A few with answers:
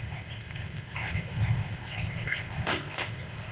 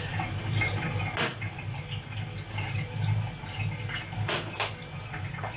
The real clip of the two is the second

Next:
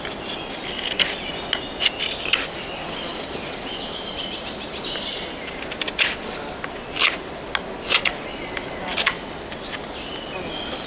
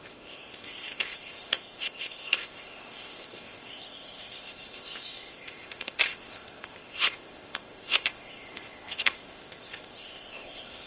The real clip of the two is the first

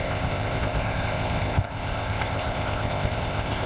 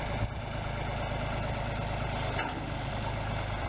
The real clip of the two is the second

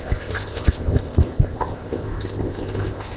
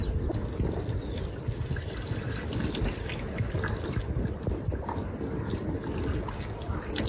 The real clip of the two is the second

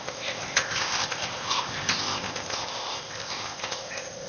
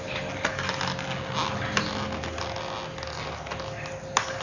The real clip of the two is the second